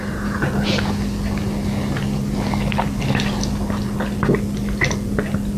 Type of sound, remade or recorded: recorded